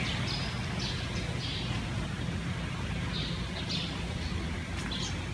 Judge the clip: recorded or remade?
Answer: recorded